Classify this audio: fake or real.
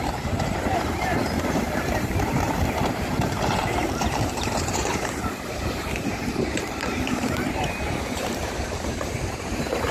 fake